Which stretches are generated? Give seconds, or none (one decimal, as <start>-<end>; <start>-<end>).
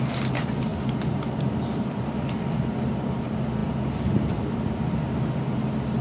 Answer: 0.7-3.2